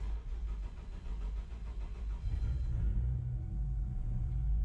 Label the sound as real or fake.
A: fake